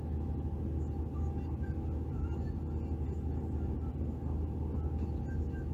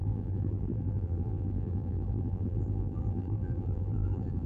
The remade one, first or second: second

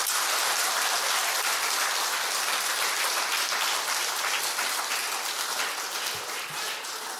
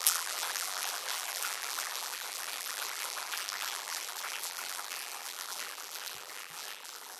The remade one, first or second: second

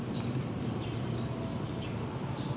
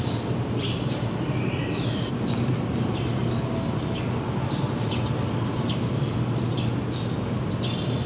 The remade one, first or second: first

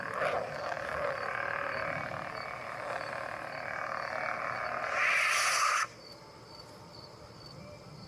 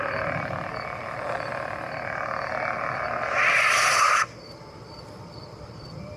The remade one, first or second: second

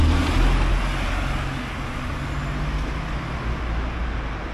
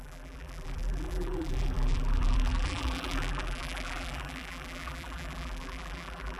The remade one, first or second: second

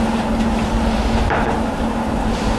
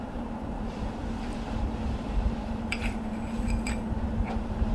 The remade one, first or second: second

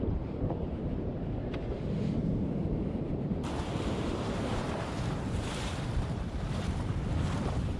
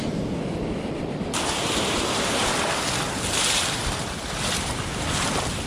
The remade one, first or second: first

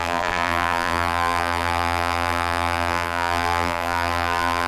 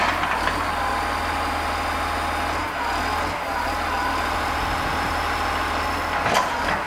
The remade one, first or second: first